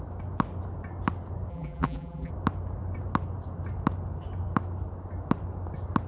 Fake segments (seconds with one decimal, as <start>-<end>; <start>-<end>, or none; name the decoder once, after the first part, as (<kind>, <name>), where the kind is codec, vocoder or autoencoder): 1.5-2.3 (vocoder, BigVGAN v2)